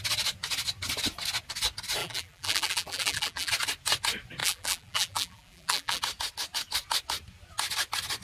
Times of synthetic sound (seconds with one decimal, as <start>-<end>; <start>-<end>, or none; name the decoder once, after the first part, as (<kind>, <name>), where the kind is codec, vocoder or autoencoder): 2.0-3.5 (vocoder, BigVGAN v2); 4.4-6.0